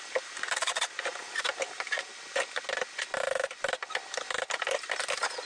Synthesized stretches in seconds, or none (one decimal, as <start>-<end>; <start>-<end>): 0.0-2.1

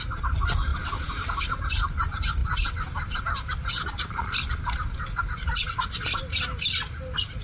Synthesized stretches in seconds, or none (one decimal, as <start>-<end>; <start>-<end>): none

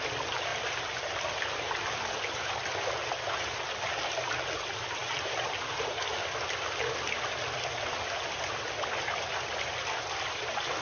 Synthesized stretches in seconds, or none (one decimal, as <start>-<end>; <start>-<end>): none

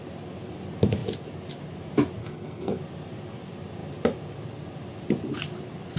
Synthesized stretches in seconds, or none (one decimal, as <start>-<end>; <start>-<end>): 2.2-2.8

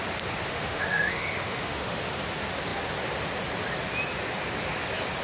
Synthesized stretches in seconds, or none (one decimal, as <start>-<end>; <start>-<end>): 0.5-2.0

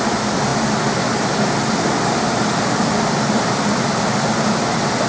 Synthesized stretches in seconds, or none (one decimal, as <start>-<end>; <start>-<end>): none

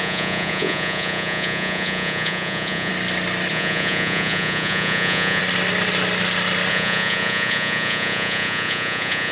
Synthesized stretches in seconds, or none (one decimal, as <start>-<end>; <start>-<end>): 0.0-2.9; 3.5-5.4; 6.7-9.3